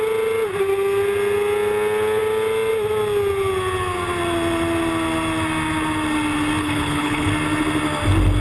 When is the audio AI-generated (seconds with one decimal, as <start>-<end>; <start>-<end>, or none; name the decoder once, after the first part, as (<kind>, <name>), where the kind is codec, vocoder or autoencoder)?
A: 6.6-7.3 (codec, HILCodec)